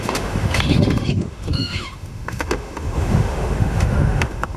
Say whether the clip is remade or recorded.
remade